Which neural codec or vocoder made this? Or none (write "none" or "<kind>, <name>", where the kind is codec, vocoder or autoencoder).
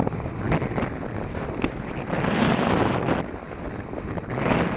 none